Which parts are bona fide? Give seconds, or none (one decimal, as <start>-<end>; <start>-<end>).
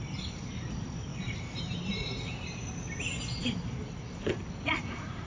0.0-1.1; 2.7-3.4